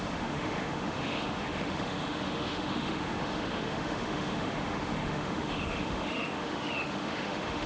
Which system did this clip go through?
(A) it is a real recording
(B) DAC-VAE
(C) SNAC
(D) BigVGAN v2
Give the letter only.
B